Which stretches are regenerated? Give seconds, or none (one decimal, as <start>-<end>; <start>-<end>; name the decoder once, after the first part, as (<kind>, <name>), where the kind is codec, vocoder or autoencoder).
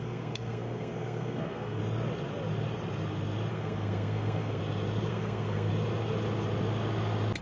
0.0-1.8 (codec, SNAC); 3.5-4.6; 5.1-5.7